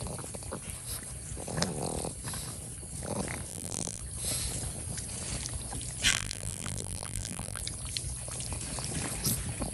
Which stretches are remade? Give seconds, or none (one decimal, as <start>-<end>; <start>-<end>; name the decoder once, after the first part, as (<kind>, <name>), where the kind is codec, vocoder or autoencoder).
3.5-4.0 (vocoder, BigVGAN v2); 6.1-7.6